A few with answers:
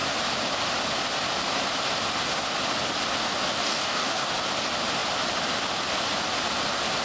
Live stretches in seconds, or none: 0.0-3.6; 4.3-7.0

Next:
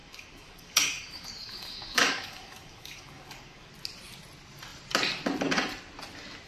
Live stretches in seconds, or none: 3.7-6.5

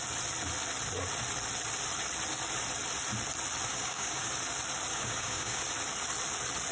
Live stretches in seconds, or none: 0.0-3.7; 4.3-4.9; 5.6-6.7

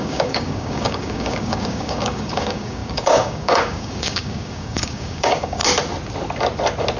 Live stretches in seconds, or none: 5.6-7.0

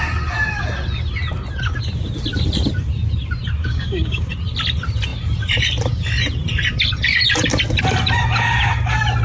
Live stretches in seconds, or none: 0.0-3.6; 4.3-9.2

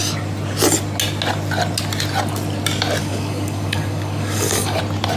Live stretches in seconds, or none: 0.0-3.0; 4.8-5.2

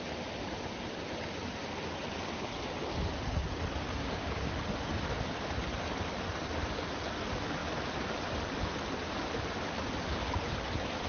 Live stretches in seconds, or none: 0.0-3.9; 4.5-11.1

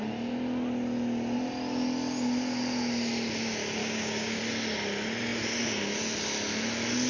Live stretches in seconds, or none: 0.0-3.8; 4.4-7.1